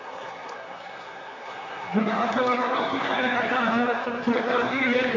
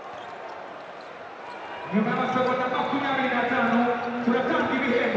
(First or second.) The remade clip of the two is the first